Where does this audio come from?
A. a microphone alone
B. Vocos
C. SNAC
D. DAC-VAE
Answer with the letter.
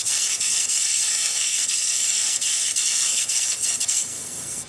C